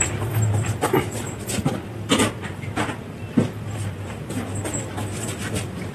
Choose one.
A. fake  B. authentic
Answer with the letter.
A